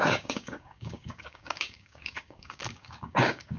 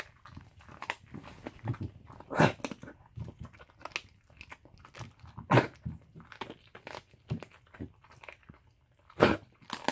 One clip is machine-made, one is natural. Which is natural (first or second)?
second